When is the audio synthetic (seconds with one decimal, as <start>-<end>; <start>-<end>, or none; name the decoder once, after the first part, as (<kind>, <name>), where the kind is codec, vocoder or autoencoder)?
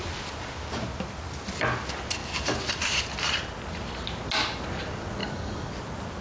5.2-5.7 (codec, DAC)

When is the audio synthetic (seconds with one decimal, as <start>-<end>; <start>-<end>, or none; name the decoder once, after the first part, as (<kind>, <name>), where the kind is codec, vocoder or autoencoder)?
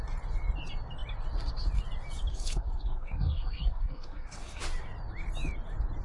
2.3-4.6 (codec, SNAC)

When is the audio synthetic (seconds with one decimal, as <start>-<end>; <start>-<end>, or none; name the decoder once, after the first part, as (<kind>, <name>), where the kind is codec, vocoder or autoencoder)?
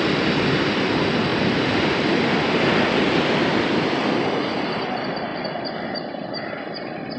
1.3-4.6 (vocoder, BigVGAN v2); 5.3-7.2